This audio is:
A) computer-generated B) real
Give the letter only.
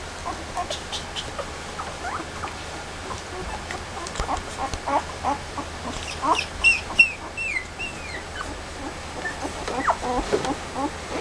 B